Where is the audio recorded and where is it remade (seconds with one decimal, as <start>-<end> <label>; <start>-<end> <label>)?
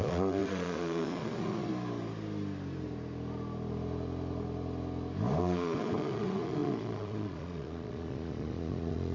0.0-1.7 remade; 1.7-5.4 recorded; 5.4-9.1 remade